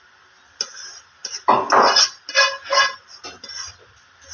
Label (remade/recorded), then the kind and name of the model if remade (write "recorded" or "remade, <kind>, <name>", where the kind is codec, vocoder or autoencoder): recorded